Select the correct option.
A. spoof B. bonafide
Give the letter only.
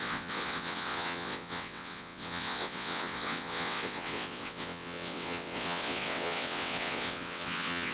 A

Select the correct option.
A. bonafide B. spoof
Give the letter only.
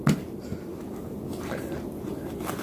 A